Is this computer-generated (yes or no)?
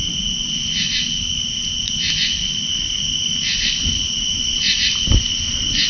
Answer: no